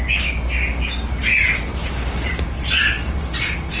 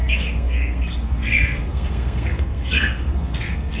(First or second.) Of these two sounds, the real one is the first